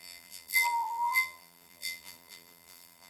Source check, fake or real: fake